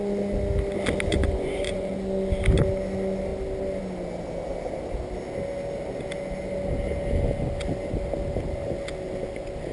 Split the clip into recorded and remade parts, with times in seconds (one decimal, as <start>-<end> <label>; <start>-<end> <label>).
0.0-1.1 recorded; 1.1-1.9 remade; 1.9-9.7 recorded